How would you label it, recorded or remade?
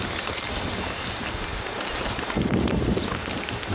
recorded